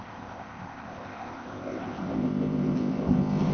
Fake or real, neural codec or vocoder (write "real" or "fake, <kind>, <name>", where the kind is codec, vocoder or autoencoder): fake, codec, ZipCodec